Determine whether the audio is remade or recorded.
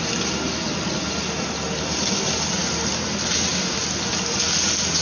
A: recorded